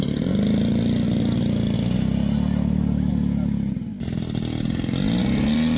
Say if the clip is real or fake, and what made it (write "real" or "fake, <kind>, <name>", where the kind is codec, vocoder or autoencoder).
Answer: real